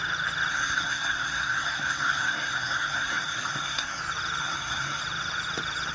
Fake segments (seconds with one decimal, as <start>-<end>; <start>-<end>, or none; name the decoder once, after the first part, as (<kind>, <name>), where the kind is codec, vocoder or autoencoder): 0.5-4.0 (codec, SNAC); 4.4-5.0